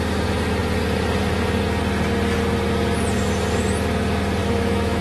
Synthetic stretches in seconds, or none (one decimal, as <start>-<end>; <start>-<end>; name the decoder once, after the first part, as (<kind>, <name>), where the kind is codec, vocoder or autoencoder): 4.4-5.0 (autoencoder, DAC-VAE)